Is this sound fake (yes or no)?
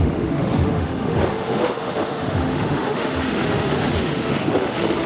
yes